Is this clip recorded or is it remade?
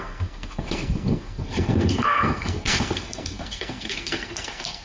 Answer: remade